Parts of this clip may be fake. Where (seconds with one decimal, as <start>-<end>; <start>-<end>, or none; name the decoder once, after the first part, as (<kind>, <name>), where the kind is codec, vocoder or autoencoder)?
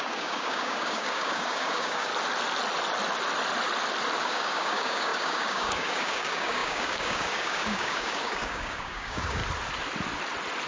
0.0-2.1 (codec, DAC); 4.2-9.4